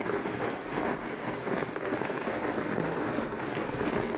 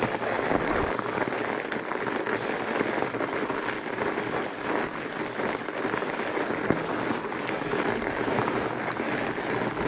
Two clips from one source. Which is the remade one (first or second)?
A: first